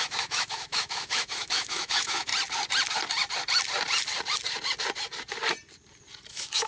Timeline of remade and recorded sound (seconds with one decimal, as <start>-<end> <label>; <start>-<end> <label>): 0.0-2.3 remade; 2.3-6.3 recorded; 6.3-6.7 remade